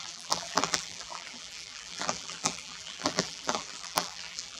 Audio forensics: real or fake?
fake